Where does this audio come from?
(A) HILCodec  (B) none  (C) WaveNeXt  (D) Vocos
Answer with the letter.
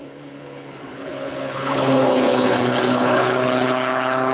A